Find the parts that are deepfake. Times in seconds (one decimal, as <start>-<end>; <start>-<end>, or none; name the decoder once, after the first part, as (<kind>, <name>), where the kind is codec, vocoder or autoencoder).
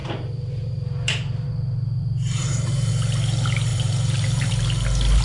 0.0-2.9 (vocoder, BigVGAN v2); 3.7-4.5